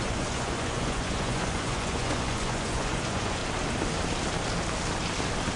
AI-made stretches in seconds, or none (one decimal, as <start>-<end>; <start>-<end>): 0.0-3.4